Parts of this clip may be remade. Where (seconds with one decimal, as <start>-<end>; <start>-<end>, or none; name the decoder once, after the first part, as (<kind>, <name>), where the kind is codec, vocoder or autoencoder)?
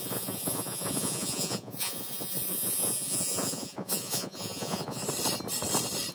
0.0-5.0 (vocoder, Vocos)